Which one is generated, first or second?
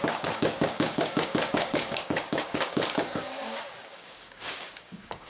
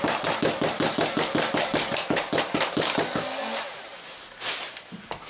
first